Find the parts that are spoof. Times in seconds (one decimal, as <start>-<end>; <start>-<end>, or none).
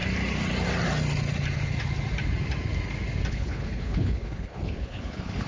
3.3-5.5